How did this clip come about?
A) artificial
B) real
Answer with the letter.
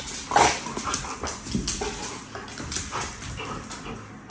B